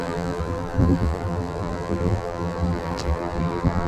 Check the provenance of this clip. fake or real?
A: fake